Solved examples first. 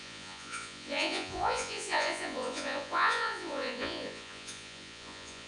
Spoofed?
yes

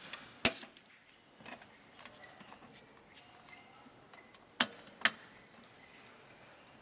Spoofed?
no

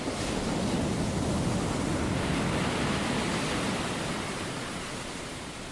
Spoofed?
no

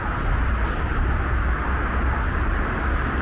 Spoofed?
no